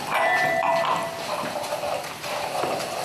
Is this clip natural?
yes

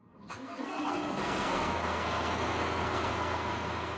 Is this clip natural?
no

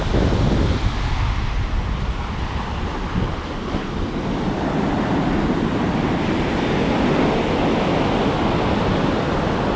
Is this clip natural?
yes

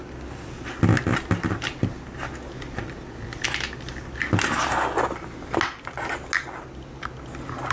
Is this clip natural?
yes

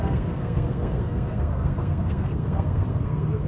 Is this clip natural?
no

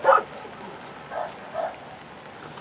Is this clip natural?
yes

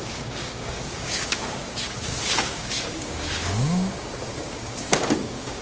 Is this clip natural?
no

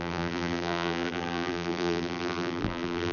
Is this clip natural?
no